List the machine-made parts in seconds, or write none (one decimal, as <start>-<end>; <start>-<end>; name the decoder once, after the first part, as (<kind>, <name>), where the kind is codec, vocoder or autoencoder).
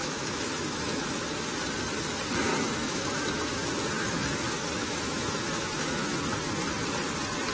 0.0-1.3 (autoencoder, DAC-VAE); 2.5-6.2